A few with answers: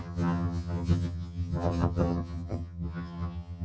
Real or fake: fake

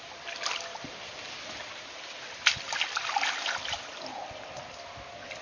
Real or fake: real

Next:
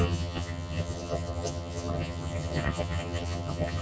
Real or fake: fake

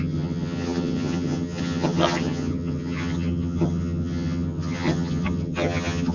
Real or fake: fake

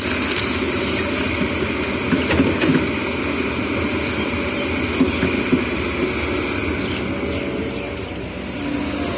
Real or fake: real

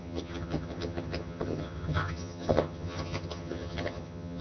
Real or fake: fake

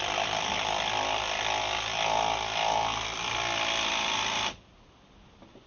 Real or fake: real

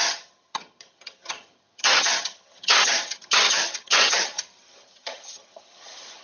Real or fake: fake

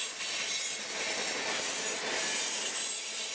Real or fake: real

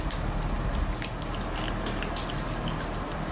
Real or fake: real